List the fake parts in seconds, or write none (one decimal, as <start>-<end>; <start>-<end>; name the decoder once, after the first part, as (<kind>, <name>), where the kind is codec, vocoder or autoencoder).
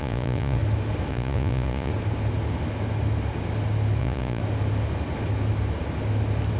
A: 0.0-0.6 (vocoder, Vocos); 1.1-1.9; 4.0-4.4